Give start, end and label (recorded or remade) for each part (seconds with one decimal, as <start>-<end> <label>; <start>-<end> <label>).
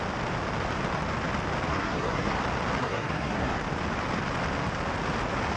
0.0-1.7 recorded; 1.7-2.4 remade; 2.4-2.8 recorded; 2.8-3.5 remade; 3.5-5.6 recorded